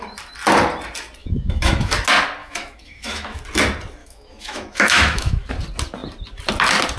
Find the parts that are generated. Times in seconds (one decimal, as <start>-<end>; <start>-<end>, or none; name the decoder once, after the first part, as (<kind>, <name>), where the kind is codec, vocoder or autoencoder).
1.2-1.9 (autoencoder, DAC-VAE); 2.4-3.4; 4.0-5.5

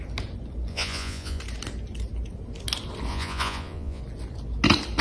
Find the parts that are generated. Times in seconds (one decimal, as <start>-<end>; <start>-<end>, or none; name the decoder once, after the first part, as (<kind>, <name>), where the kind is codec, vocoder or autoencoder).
0.7-1.4 (vocoder, Vocos); 3.1-4.0

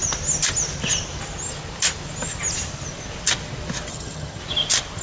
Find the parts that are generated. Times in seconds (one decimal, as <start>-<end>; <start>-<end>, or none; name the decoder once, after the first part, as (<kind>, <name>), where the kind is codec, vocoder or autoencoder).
3.9-4.4 (vocoder, HiFi-GAN)

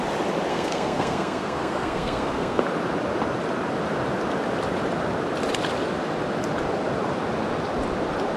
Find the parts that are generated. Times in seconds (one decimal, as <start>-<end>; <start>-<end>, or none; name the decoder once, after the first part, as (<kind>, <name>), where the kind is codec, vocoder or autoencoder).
0.5-2.6 (codec, SNAC)